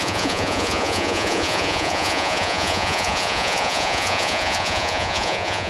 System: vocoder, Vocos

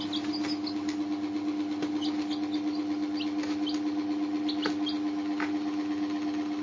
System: none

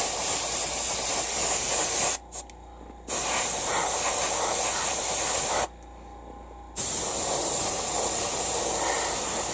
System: none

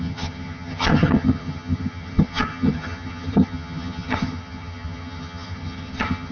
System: vocoder, HiFi-GAN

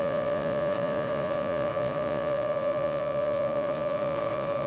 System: vocoder, Vocos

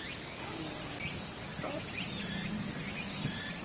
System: none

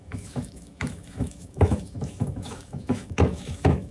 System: autoencoder, DAC-VAE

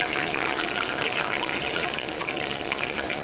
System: vocoder, Vocos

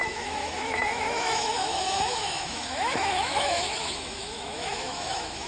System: autoencoder, DAC-VAE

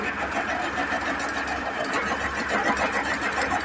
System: none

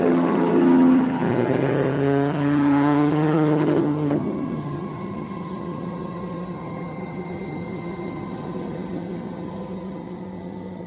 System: vocoder, HiFi-GAN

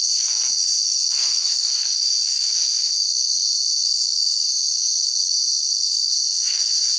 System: codec, SNAC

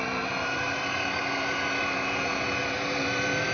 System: none